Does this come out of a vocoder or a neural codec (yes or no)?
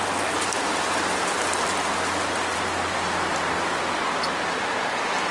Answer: no